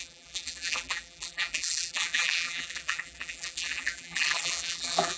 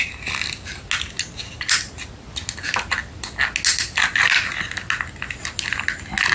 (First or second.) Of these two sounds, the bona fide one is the second